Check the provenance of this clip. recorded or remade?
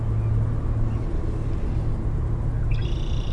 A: recorded